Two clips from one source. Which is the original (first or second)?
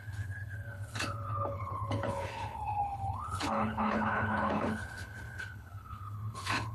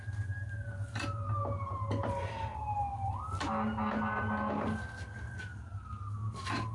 second